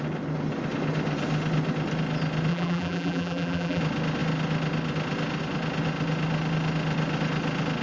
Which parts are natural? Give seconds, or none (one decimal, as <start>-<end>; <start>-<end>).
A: 0.0-2.5; 3.8-7.8